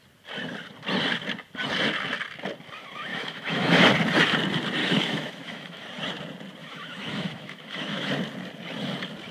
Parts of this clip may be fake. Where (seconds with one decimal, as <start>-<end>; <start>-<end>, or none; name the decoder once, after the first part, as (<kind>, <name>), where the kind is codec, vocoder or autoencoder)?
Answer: 3.1-3.8 (autoencoder, DAC-VAE); 4.8-5.8; 6.6-8.1